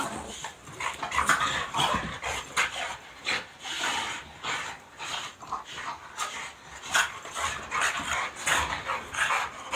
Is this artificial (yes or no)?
no